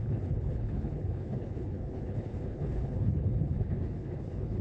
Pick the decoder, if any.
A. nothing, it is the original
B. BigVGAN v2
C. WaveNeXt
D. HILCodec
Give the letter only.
D